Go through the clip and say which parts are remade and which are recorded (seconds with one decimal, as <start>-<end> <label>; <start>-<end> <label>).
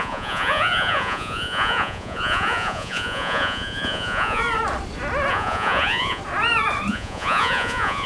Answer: 0.0-4.4 remade; 4.4-5.3 recorded; 5.3-6.2 remade; 6.2-6.9 recorded; 6.9-8.1 remade